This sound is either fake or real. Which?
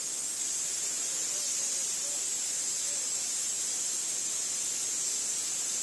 real